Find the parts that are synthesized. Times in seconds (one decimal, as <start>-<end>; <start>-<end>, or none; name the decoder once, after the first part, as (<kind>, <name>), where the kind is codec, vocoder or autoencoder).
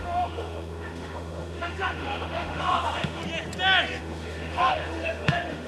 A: 0.0-3.2 (autoencoder, DAC-VAE); 4.0-5.7